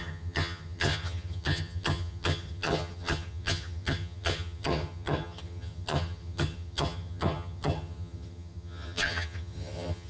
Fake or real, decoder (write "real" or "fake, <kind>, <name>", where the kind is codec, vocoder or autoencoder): fake, vocoder, HiFi-GAN